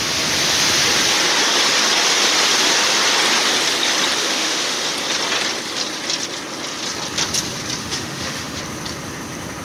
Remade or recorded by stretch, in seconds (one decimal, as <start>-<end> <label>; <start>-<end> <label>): 0.0-4.2 recorded; 4.2-4.8 remade; 4.8-7.8 recorded; 7.8-8.6 remade; 8.6-9.6 recorded